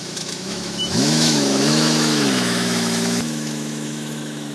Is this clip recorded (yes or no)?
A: no